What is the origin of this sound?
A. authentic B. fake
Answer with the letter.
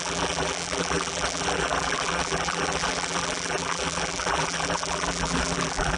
B